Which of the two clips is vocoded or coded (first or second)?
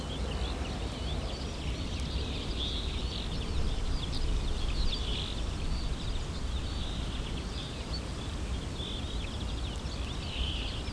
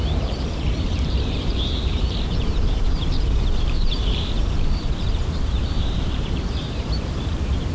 second